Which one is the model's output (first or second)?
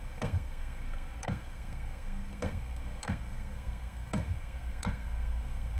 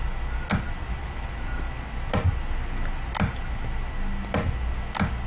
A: first